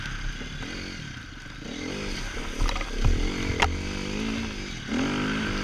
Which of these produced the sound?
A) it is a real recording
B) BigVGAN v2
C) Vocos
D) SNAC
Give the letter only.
A